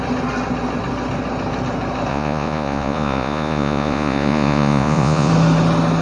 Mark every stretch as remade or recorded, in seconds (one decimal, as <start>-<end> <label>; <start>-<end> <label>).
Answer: 0.0-2.1 recorded; 2.1-5.3 remade; 5.3-6.0 recorded